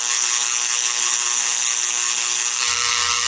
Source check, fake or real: fake